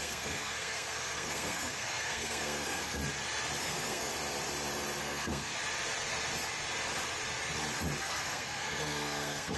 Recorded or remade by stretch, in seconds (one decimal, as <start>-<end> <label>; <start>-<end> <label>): 0.0-3.0 remade; 3.0-3.6 recorded; 3.6-4.1 remade; 4.1-5.0 recorded; 5.0-5.5 remade; 5.5-8.0 recorded; 8.0-9.6 remade